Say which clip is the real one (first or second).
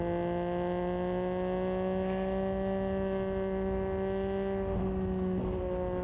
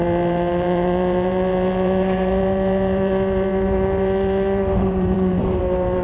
first